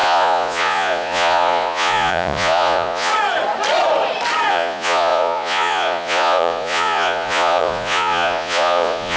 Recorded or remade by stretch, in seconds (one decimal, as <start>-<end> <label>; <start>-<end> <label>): 0.0-3.1 remade; 3.1-4.5 recorded; 4.5-9.2 remade